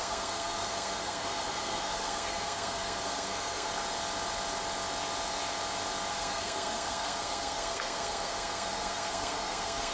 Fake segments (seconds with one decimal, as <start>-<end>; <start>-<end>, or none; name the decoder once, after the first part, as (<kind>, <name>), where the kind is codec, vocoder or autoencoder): 0.0-3.7 (codec, SNAC); 6.1-9.9

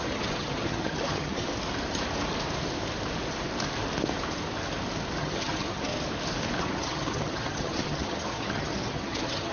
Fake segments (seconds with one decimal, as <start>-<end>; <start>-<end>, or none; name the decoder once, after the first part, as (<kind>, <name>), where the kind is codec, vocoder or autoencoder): 0.0-1.5 (vocoder, HiFi-GAN); 5.2-5.9; 6.6-9.5

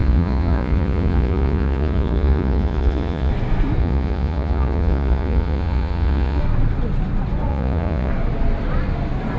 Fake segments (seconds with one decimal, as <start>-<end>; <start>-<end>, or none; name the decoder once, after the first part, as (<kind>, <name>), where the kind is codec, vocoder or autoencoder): 0.0-3.3 (vocoder, Vocos); 3.8-6.4; 7.5-8.1